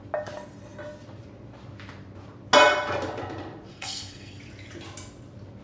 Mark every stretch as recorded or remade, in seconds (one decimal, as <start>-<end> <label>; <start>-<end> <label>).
0.0-3.7 recorded; 3.7-4.4 remade; 4.4-5.6 recorded